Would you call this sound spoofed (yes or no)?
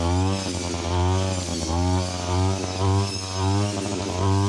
no